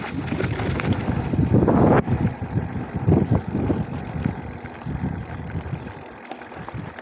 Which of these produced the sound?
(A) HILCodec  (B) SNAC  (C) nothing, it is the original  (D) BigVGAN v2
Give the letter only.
D